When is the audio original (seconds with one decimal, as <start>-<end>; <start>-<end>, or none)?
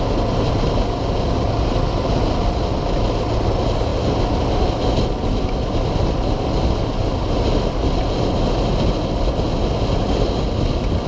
0.0-11.1